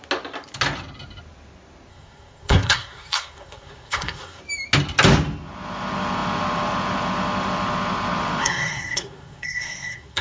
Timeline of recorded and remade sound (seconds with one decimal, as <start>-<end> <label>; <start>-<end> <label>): 0.0-1.9 recorded; 1.9-4.4 remade; 4.4-8.4 recorded; 8.4-10.2 remade